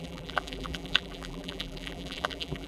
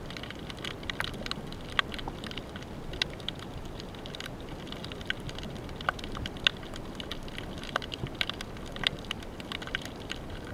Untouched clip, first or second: second